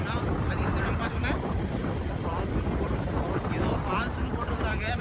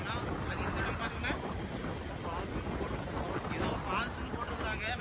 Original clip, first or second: second